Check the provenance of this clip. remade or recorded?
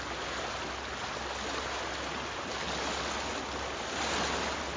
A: recorded